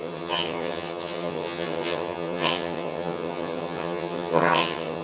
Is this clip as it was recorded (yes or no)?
no